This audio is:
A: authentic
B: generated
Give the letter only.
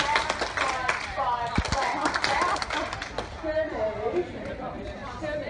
A